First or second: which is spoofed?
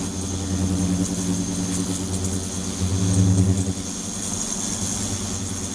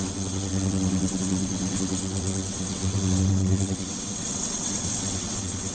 second